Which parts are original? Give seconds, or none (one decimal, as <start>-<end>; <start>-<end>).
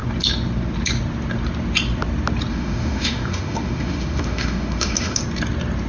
0.0-2.5; 5.2-5.9